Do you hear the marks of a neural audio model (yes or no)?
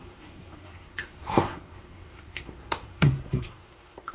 yes